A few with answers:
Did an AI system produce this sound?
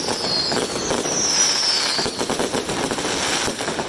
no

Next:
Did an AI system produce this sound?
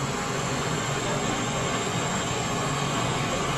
yes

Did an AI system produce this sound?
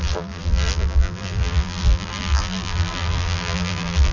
yes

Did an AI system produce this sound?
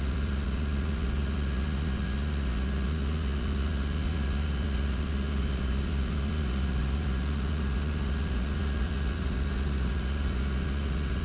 yes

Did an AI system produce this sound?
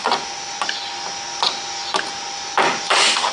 no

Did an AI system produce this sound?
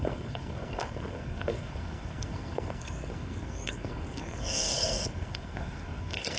yes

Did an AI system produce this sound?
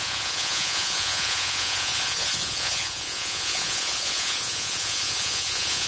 yes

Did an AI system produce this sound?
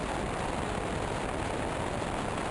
no